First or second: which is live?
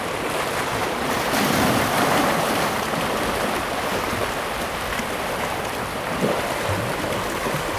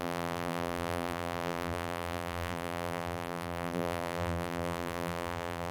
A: first